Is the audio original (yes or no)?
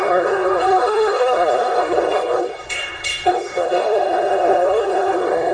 no